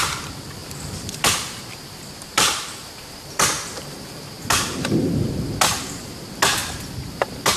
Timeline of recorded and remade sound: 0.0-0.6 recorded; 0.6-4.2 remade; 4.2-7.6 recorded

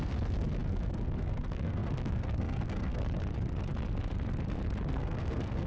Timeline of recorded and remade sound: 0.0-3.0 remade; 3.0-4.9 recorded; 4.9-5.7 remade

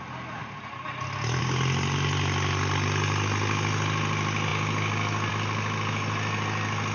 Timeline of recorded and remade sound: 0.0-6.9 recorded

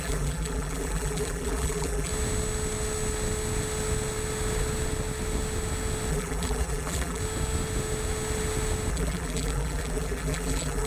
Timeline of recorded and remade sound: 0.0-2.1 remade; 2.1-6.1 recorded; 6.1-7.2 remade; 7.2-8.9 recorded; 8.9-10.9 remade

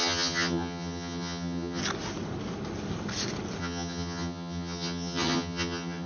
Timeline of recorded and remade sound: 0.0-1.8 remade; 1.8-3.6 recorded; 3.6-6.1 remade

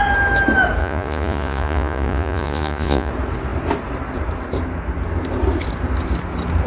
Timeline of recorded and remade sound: 0.0-0.8 recorded; 0.8-3.1 remade; 3.1-6.7 recorded